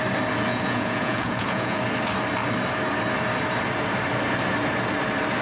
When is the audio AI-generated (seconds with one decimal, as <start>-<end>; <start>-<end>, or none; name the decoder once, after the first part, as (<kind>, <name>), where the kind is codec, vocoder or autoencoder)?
0.5-1.8 (vocoder, Vocos)